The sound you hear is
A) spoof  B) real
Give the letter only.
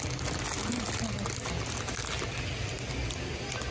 B